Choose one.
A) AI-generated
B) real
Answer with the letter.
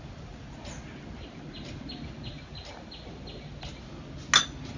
B